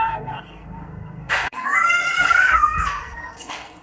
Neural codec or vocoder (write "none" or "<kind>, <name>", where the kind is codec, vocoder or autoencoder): codec, SNAC